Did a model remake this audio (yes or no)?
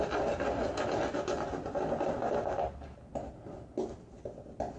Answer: no